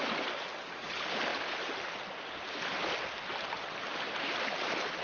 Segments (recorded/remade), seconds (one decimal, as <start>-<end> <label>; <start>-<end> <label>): 0.0-5.0 recorded